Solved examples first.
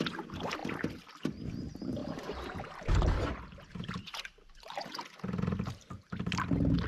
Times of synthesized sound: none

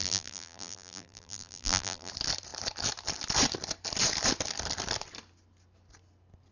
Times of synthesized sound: 0.0-2.1 (vocoder, BigVGAN v2)

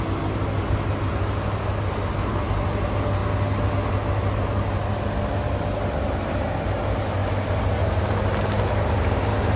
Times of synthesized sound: none

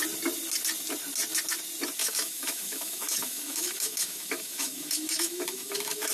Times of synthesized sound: 2.0-6.1 (autoencoder, DAC-VAE)

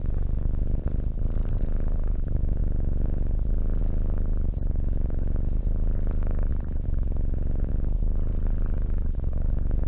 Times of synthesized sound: 0.0-9.9 (vocoder, Vocos)

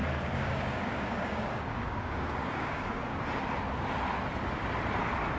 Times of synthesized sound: 0.0-3.2 (codec, DAC)